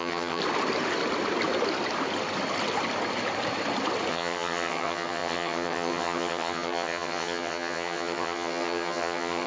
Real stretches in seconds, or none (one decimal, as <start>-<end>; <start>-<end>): 0.4-4.1